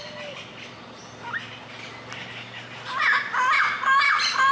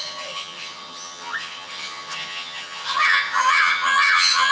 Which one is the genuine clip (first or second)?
first